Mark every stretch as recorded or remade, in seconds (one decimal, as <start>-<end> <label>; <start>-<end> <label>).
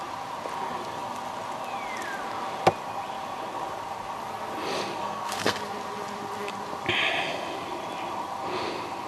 0.0-5.0 recorded; 5.0-5.6 remade; 5.6-9.1 recorded